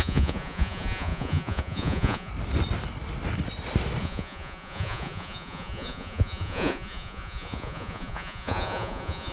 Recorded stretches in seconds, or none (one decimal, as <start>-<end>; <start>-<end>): 2.3-4.0